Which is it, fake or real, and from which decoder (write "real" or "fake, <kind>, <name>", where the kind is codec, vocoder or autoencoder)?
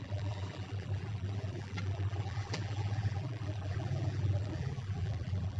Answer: fake, vocoder, BigVGAN v2